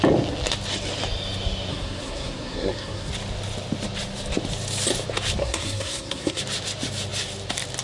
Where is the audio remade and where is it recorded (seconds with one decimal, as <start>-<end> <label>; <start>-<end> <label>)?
0.0-1.7 recorded; 1.7-3.1 remade; 3.1-5.4 recorded; 5.4-6.4 remade; 6.4-7.8 recorded